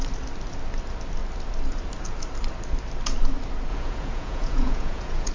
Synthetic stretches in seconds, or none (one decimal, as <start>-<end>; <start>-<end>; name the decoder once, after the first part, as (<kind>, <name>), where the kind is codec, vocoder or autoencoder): 3.7-5.3 (vocoder, Vocos)